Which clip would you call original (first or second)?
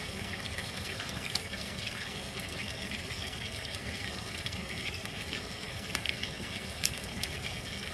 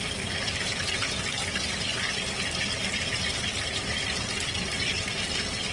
second